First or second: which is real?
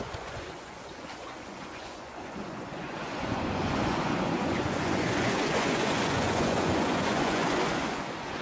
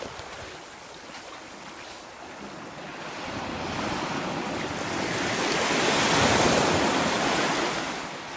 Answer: second